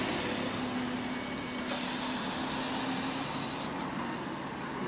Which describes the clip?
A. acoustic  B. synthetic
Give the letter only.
A